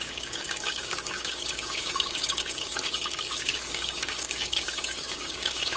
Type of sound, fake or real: fake